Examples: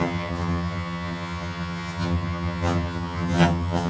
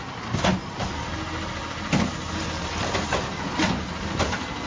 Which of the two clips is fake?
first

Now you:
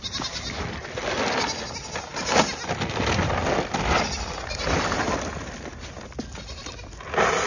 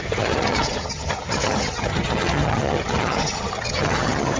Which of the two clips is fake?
second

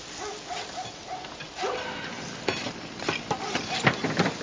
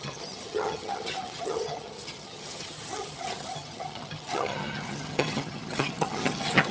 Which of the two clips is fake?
second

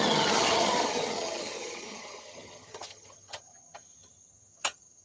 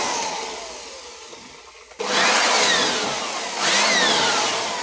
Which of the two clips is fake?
first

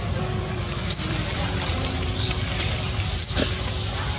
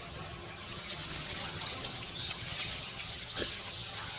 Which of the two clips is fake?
second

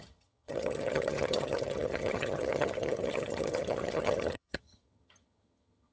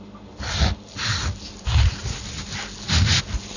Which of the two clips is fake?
first